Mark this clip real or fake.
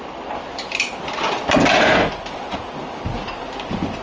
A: real